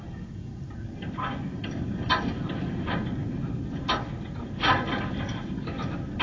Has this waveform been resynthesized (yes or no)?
no